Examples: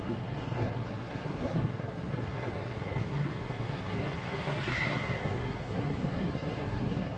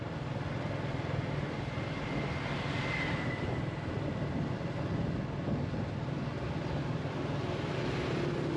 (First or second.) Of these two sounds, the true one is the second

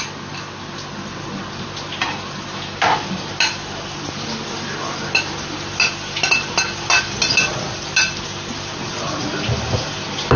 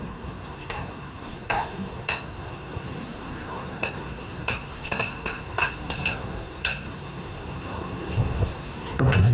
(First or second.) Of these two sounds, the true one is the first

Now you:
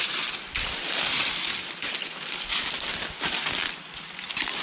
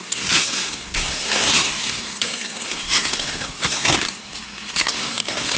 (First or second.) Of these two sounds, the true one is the first